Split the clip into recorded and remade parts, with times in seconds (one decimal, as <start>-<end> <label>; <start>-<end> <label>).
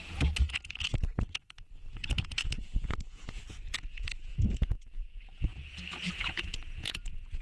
0.0-5.5 remade; 5.5-6.1 recorded; 6.1-7.4 remade